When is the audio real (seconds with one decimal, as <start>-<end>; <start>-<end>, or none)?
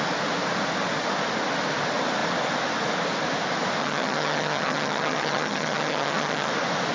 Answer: 0.0-3.8; 6.5-6.9